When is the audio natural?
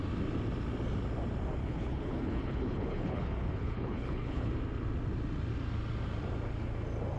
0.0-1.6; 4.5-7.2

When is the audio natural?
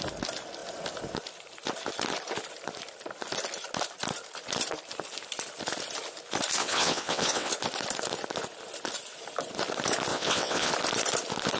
0.0-6.6; 7.5-10.1; 10.7-11.6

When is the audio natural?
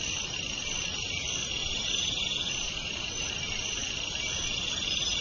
0.0-1.6; 3.4-5.2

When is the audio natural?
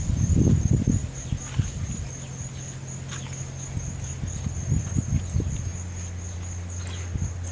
0.0-1.0; 2.9-7.5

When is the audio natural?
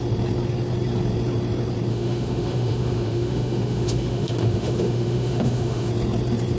0.0-1.9; 5.9-6.6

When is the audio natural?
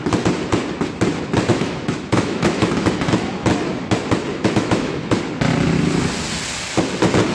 0.0-1.5; 3.5-4.3; 5.2-7.3